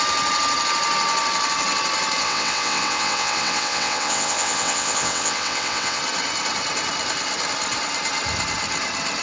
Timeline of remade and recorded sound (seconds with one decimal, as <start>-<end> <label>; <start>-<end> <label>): 0.0-2.2 recorded; 2.2-6.0 remade; 6.0-9.2 recorded